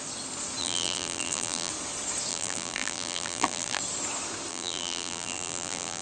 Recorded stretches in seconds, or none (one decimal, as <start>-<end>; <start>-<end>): 0.0-0.6; 1.7-2.3; 3.8-4.5